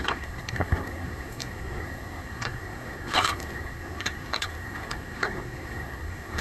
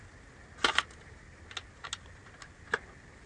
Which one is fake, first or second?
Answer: first